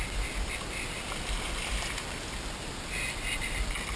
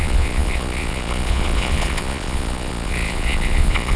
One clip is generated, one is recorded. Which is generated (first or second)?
second